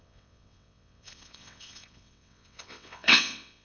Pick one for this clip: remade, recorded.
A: remade